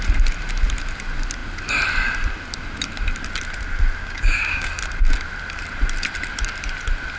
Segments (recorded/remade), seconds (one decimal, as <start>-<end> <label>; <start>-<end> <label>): 0.0-4.0 recorded; 4.0-4.7 remade; 4.7-7.2 recorded